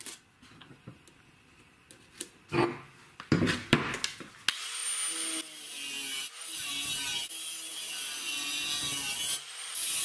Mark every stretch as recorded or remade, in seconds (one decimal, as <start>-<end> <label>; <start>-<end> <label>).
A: 0.0-10.0 recorded